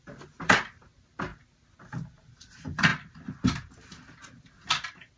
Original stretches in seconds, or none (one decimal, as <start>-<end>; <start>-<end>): 0.0-5.2